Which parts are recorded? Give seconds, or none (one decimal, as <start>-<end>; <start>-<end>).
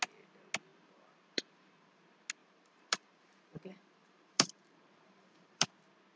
0.0-0.7; 2.0-2.4; 5.7-6.2